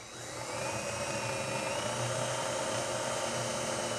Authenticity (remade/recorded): recorded